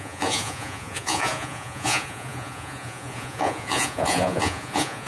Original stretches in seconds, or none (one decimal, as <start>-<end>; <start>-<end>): none